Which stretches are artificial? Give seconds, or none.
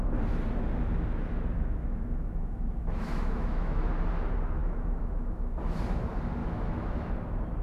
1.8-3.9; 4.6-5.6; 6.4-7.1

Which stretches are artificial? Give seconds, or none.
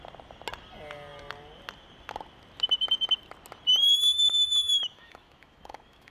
3.9-6.1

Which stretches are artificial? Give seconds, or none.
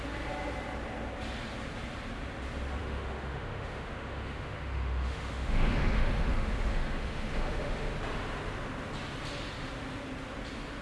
2.8-7.9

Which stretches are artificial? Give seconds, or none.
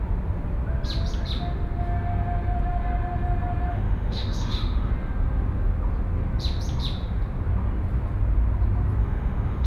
3.7-4.9; 9.0-9.7